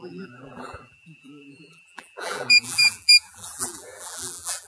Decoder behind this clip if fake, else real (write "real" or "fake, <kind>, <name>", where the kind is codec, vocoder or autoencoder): fake, vocoder, BigVGAN v2